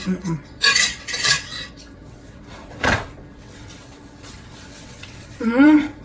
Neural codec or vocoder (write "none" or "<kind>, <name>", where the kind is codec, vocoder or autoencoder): vocoder, WaveNeXt